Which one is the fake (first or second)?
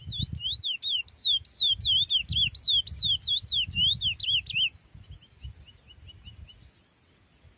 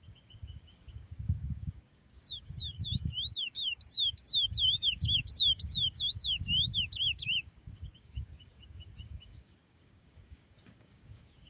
second